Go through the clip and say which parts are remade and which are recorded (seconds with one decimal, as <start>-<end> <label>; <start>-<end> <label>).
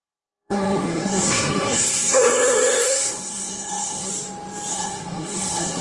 0.0-4.1 remade; 4.1-4.7 recorded; 4.7-5.8 remade